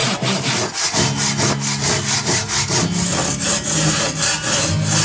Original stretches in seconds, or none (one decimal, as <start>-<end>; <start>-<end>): 0.0-5.0

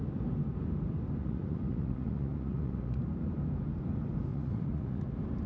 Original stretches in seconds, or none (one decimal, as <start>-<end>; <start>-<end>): 0.0-1.2; 3.0-4.3; 5.0-5.5

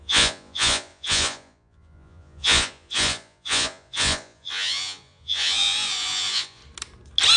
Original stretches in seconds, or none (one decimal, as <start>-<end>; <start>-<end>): 6.6-7.4

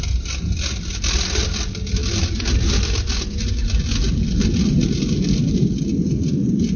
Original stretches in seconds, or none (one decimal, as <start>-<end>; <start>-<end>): 0.0-6.8

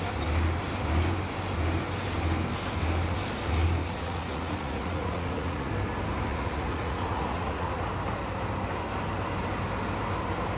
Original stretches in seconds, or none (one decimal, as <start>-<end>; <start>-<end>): 0.0-3.8; 5.7-6.3; 7.8-10.6

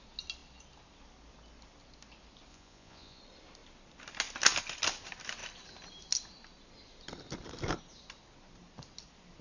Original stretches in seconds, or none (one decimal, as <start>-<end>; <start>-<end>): 0.0-2.5; 3.2-9.4

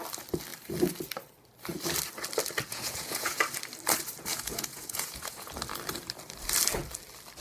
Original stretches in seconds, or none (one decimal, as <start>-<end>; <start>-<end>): 0.0-2.7; 3.4-4.3; 5.5-7.4